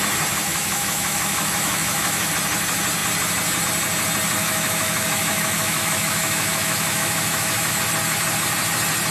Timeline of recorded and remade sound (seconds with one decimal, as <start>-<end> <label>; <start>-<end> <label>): 0.0-0.5 recorded; 0.5-2.3 remade; 2.3-4.4 recorded; 4.4-7.8 remade; 7.8-9.1 recorded